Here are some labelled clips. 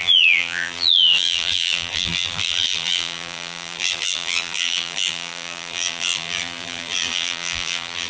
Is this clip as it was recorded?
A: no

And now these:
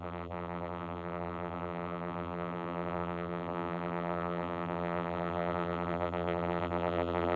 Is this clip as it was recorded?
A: no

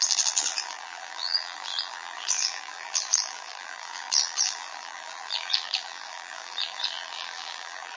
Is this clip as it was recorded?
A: no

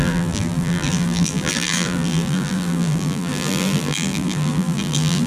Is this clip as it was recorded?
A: no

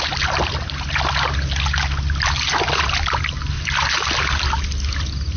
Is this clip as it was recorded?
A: yes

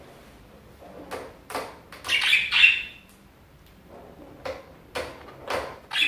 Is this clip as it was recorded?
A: yes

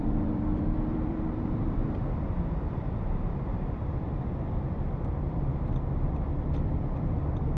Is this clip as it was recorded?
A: no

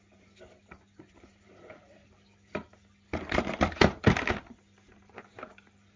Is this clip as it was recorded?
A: no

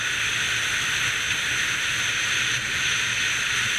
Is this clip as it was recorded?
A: yes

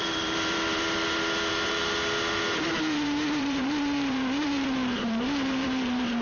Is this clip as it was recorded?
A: no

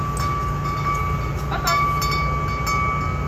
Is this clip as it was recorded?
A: yes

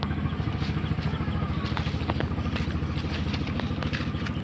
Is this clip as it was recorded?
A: yes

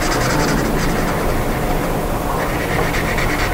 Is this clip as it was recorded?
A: yes